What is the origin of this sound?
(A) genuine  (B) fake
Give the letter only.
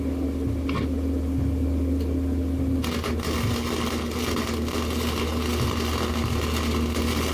A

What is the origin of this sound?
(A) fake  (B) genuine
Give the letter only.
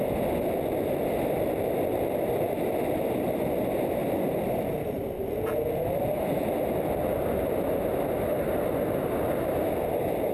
B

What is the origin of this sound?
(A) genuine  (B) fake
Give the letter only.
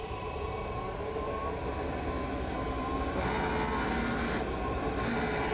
A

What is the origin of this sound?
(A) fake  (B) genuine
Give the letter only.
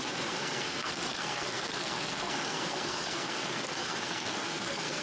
A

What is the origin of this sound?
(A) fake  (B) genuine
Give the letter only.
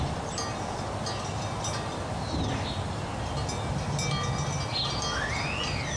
B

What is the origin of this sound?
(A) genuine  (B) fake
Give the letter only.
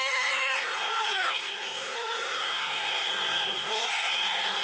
B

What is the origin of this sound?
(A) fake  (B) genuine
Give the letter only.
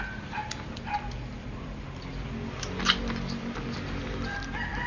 B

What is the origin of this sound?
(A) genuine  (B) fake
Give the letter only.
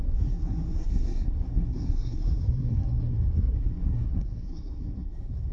B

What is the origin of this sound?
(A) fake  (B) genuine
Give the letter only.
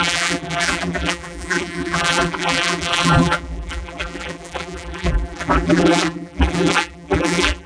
A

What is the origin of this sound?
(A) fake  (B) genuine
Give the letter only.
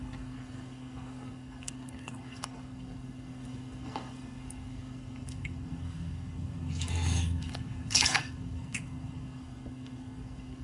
A